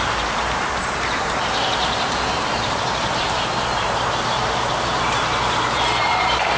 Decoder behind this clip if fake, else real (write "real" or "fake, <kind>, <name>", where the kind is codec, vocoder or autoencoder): fake, vocoder, BigVGAN v2